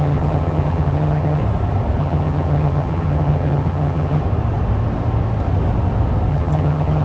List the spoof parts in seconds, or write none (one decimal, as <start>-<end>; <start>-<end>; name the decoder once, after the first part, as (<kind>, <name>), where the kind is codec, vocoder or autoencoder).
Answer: 0.0-1.4 (vocoder, HiFi-GAN); 2.0-4.2; 6.3-7.0